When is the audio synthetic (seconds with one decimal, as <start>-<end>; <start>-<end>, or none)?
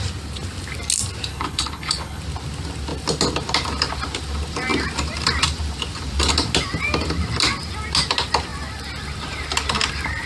1.3-2.2